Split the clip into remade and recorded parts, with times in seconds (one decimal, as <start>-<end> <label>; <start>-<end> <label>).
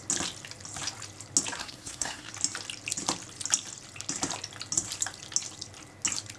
0.0-1.6 recorded; 1.6-2.3 remade; 2.3-6.4 recorded